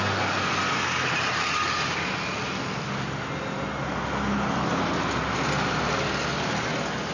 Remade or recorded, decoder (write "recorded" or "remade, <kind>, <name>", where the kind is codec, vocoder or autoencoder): recorded